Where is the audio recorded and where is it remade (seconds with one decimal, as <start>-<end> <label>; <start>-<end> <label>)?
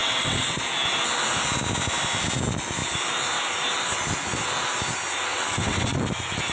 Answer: 0.0-0.6 remade; 0.6-5.3 recorded; 5.3-6.0 remade; 6.0-6.5 recorded